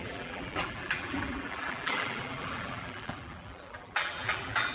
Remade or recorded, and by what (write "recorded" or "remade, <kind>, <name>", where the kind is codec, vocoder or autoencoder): remade, vocoder, BigVGAN v2